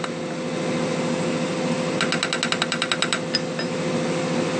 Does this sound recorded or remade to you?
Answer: recorded